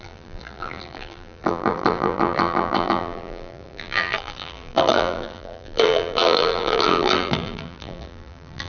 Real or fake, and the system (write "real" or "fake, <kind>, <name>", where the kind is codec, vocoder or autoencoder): fake, vocoder, BigVGAN v2